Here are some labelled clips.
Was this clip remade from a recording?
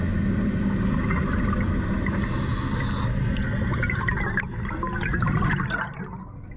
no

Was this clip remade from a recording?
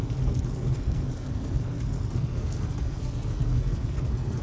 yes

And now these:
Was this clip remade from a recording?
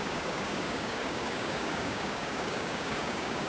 yes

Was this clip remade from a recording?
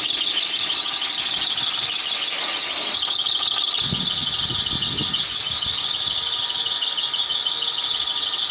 no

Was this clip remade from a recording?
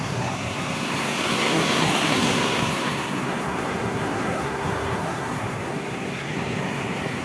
yes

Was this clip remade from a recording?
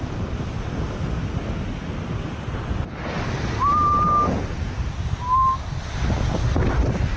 no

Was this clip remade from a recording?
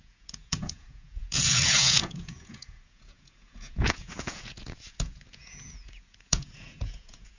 yes